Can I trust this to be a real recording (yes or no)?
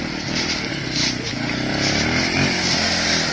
yes